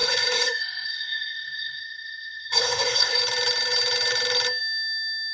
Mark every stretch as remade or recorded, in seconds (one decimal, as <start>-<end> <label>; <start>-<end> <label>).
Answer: 0.0-3.2 remade; 3.2-5.3 recorded